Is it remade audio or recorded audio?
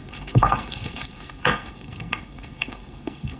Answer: remade